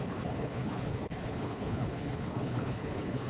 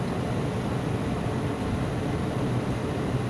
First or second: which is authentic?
second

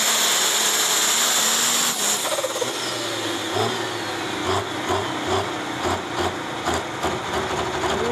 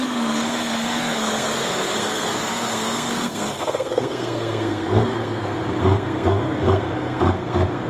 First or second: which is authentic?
first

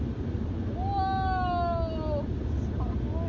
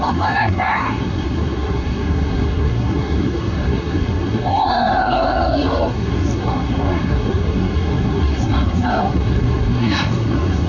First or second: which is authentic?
first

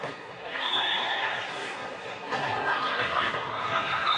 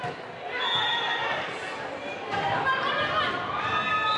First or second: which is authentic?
second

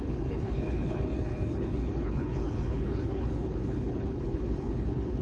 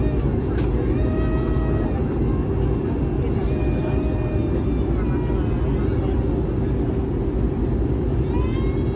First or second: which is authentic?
second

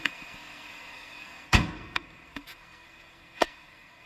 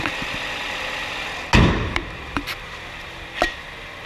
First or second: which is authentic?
second